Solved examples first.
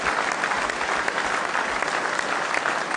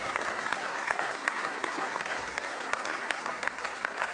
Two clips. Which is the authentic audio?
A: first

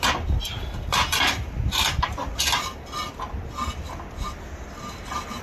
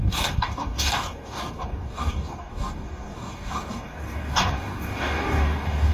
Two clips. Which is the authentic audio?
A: first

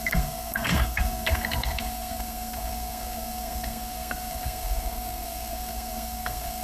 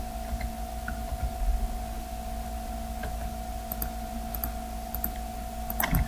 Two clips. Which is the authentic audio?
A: second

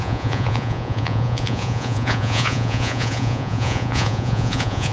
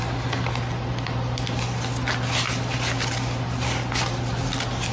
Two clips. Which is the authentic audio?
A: second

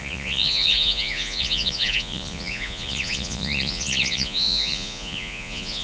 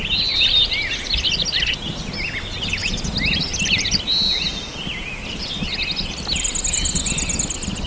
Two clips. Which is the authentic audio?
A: second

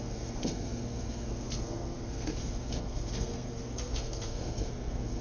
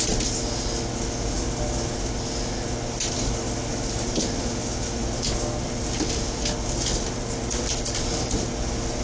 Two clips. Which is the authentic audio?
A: second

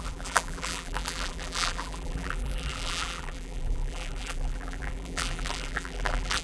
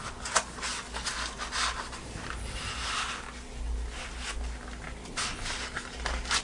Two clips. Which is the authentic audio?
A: second